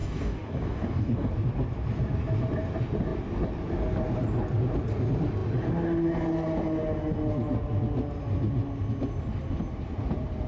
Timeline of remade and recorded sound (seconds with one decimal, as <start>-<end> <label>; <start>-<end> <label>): 0.0-1.3 remade; 1.3-10.5 recorded